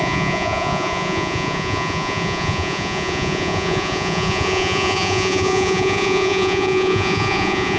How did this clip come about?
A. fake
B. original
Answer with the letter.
A